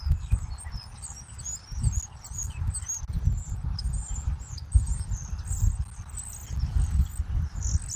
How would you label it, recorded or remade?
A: recorded